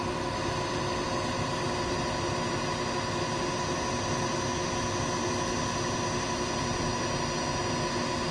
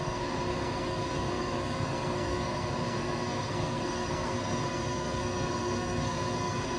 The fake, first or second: second